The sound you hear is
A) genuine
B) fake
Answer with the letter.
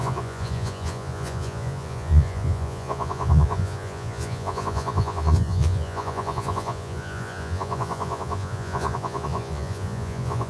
B